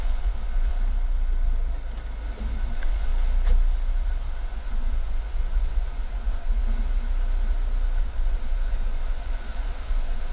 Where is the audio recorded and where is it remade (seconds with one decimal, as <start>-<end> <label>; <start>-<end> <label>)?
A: 0.0-0.7 remade; 0.7-2.7 recorded; 2.7-3.1 remade; 3.1-4.3 recorded; 4.3-6.6 remade; 6.6-8.0 recorded; 8.0-10.3 remade